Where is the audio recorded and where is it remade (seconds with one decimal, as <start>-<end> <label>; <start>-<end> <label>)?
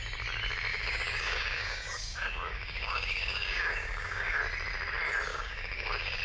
0.0-0.7 recorded; 0.7-4.4 remade; 4.4-5.3 recorded; 5.3-6.2 remade